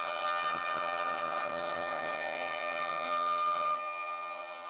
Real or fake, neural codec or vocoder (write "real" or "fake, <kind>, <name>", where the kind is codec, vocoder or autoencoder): fake, vocoder, HiFi-GAN